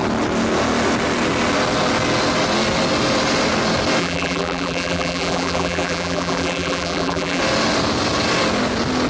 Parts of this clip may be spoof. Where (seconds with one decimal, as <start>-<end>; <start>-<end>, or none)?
4.0-7.4